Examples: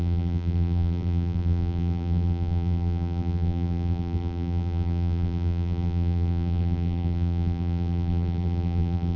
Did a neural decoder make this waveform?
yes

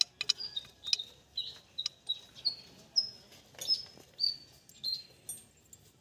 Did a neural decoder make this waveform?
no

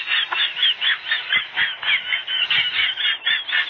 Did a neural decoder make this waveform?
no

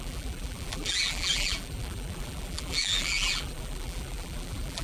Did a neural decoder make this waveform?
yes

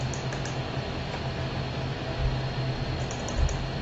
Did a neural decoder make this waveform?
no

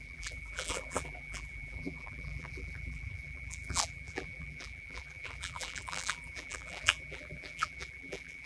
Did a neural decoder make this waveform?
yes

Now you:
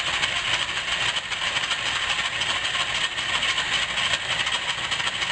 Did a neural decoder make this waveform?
no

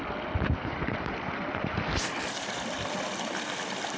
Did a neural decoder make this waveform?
yes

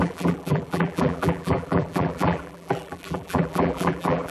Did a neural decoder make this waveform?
yes